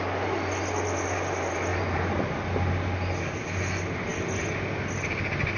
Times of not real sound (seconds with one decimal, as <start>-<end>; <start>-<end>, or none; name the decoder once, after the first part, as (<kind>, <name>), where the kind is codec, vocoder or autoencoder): none